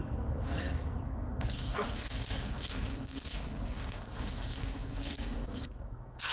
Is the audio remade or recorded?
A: remade